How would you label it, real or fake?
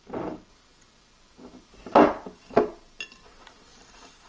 real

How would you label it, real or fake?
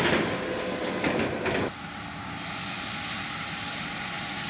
real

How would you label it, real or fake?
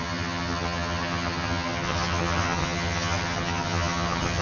fake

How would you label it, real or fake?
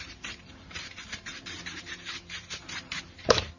fake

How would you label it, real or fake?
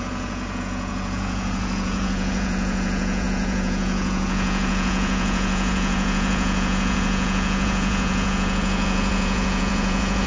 fake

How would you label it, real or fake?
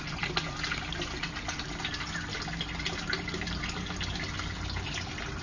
real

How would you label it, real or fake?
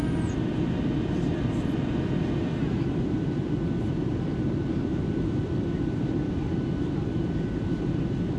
fake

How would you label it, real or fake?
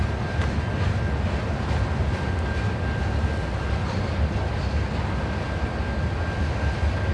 real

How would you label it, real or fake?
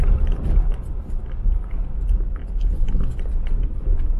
real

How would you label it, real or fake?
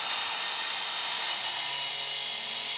real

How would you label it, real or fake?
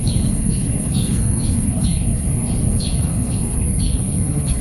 fake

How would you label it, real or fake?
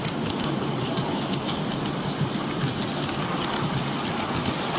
real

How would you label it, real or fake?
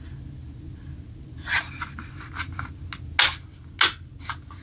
real